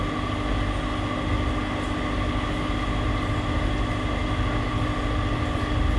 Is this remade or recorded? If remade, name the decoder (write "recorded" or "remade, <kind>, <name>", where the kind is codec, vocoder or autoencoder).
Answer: recorded